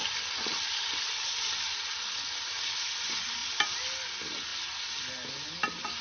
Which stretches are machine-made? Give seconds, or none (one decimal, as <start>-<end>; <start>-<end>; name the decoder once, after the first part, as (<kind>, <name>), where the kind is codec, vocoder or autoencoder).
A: 0.0-2.0 (vocoder, BigVGAN v2)